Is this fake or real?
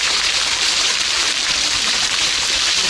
fake